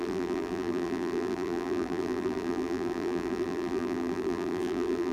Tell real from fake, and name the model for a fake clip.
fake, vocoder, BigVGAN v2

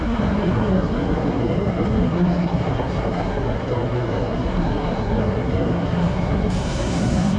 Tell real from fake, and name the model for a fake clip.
fake, codec, SNAC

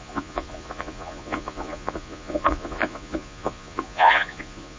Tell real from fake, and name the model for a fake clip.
fake, vocoder, Vocos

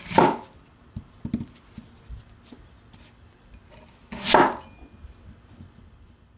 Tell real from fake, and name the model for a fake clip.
real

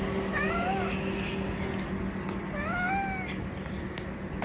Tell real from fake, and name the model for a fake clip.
real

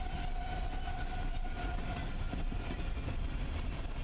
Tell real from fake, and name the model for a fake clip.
real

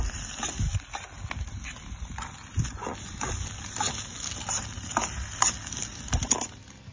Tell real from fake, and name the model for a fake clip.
real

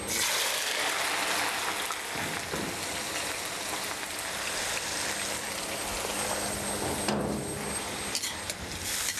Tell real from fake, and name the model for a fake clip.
real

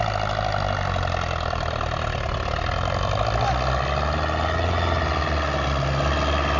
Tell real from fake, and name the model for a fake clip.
real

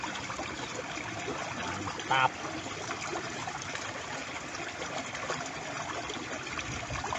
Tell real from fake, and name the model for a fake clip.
fake, vocoder, BigVGAN v2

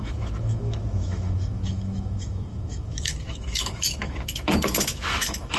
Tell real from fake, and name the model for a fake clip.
fake, autoencoder, DAC-VAE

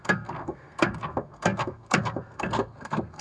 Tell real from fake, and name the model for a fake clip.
fake, codec, SNAC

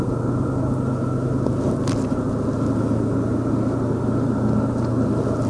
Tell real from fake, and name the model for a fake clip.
real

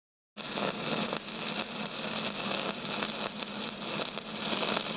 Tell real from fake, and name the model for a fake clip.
real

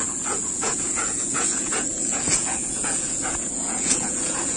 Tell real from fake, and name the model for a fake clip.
fake, vocoder, Vocos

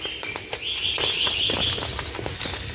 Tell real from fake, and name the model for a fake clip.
real